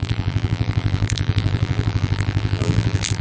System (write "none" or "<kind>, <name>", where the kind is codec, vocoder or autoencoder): vocoder, BigVGAN v2